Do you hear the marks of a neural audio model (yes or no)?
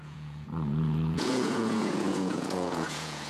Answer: yes